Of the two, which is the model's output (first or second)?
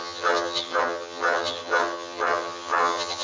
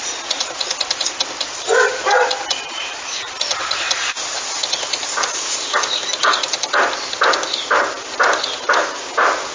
first